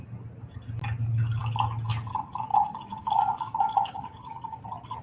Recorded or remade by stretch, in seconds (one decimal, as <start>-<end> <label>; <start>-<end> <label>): 0.0-2.5 recorded; 2.5-4.6 remade; 4.6-5.0 recorded

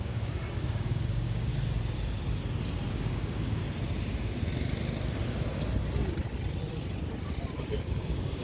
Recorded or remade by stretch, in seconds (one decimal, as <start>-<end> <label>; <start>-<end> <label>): 0.0-1.5 remade; 1.5-2.9 recorded; 2.9-3.6 remade; 3.6-7.6 recorded; 7.6-8.4 remade

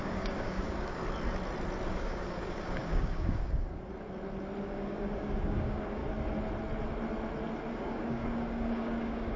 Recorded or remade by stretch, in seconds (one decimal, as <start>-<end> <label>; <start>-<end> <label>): 0.0-1.0 remade; 1.0-1.9 recorded; 1.9-3.9 remade; 3.9-4.6 recorded; 4.6-6.0 remade; 6.0-7.7 recorded; 7.7-9.4 remade